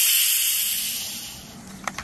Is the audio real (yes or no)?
yes